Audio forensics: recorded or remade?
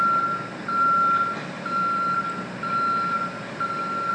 remade